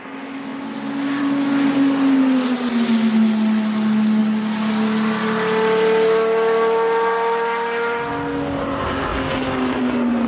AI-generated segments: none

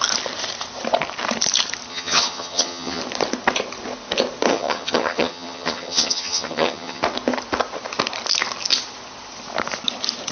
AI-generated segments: 1.9-3.0 (vocoder, HiFi-GAN); 4.5-7.0

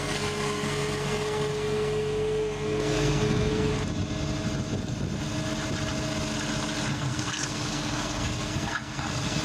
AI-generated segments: 0.0-3.7 (codec, SNAC); 6.9-9.4

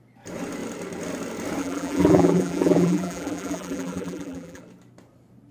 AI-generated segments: 1.6-4.6 (vocoder, BigVGAN v2)

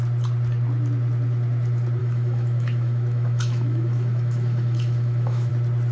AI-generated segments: 2.0-5.5 (autoencoder, DAC-VAE)

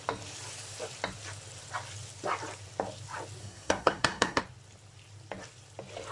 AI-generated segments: 3.4-4.4 (codec, SNAC)

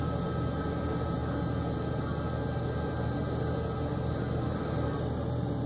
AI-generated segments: none

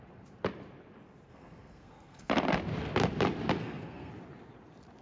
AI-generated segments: 1.3-2.3 (codec, SNAC); 3.6-4.1